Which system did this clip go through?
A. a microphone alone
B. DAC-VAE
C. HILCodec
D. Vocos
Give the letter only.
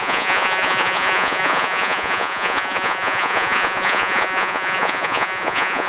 D